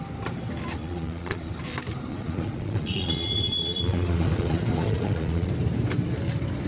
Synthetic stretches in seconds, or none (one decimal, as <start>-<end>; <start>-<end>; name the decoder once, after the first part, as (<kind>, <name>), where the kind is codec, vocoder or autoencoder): 0.8-1.5 (vocoder, Vocos); 2.1-5.5